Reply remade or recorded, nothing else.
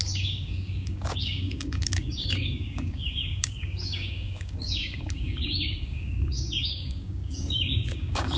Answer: remade